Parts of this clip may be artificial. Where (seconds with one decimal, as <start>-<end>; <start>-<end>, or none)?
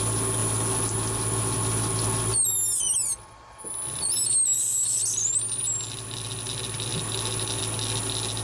none